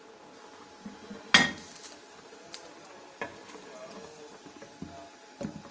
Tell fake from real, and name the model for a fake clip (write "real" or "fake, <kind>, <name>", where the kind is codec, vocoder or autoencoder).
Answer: real